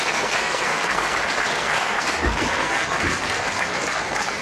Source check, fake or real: fake